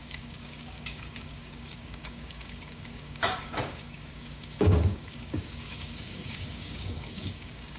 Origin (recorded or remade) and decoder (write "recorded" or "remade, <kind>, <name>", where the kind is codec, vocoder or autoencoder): remade, codec, DAC